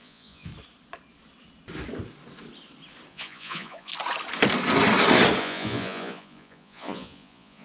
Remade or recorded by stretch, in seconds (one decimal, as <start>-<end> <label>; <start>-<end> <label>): 0.0-0.5 remade; 0.5-3.1 recorded; 3.1-3.9 remade; 3.9-5.4 recorded; 5.4-7.6 remade